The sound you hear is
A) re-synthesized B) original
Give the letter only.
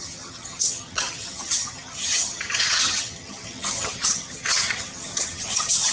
A